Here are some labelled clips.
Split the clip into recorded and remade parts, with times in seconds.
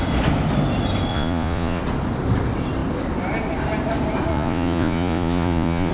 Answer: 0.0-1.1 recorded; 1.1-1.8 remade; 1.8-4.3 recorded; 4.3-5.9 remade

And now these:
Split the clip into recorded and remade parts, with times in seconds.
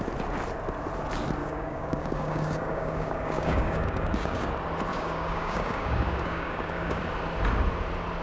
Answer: 0.0-1.4 recorded; 1.4-4.5 remade; 4.5-4.9 recorded; 4.9-7.0 remade; 7.0-8.2 recorded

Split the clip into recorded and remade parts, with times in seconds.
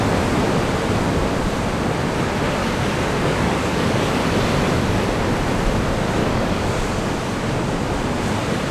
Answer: 0.0-2.6 recorded; 2.6-4.2 remade; 4.2-6.2 recorded; 6.2-7.2 remade; 7.2-8.7 recorded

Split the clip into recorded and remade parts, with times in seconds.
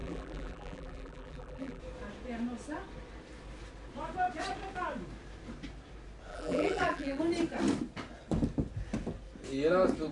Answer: 0.0-1.8 remade; 1.8-6.3 recorded; 6.3-7.2 remade; 7.2-10.1 recorded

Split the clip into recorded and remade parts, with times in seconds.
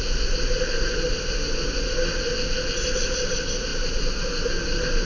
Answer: 0.0-5.0 recorded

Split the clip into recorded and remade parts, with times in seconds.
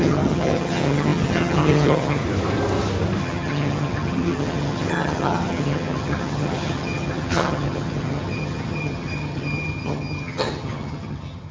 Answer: 0.0-2.2 remade; 2.2-3.2 recorded; 3.2-11.5 remade